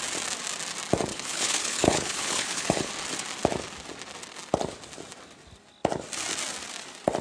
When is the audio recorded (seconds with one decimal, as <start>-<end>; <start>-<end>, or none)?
0.0-1.1; 2.9-7.2